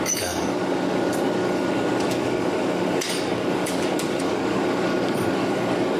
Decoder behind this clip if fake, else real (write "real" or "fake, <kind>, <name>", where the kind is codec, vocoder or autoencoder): fake, codec, DAC